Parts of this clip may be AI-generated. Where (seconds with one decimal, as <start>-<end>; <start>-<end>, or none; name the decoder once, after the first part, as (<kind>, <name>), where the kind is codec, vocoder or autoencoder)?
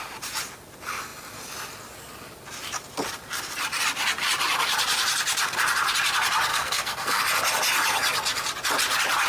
6.5-7.2 (codec, SNAC)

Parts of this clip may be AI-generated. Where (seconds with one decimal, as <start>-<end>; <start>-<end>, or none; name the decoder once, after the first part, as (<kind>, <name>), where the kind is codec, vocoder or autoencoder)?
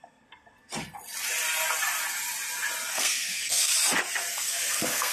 0.0-0.7 (codec, SNAC); 2.9-3.7; 4.3-5.1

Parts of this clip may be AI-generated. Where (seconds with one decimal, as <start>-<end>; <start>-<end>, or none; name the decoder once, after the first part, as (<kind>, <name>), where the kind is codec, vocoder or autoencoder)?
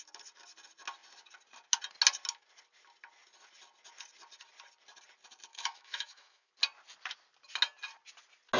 5.5-6.5 (autoencoder, DAC-VAE)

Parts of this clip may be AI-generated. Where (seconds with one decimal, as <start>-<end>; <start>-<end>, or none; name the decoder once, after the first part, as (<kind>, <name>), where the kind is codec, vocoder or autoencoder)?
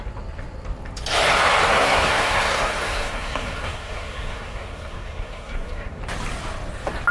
1.7-6.0 (codec, SNAC)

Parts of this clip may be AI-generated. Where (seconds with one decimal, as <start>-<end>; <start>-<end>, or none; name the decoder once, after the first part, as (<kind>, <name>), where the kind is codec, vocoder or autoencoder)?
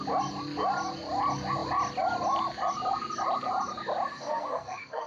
4.1-5.1 (codec, SNAC)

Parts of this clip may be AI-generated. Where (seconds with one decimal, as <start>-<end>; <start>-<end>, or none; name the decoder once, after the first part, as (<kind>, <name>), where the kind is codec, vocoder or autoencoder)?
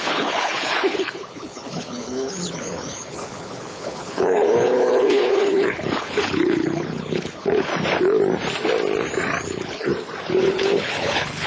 0.0-7.7 (codec, HILCodec); 9.4-9.9; 10.4-11.5